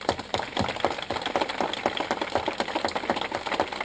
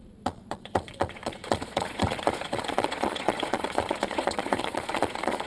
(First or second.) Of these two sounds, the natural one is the first